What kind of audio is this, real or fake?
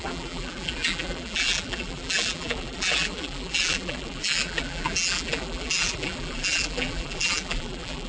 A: fake